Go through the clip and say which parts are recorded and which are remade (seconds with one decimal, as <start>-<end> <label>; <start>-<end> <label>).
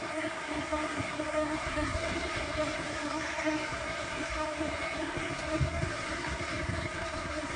0.0-7.6 remade